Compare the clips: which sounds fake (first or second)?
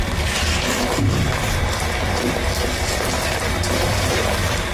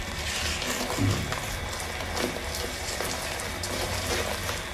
first